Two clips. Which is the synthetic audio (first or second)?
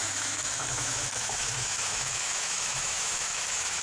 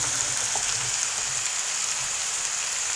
first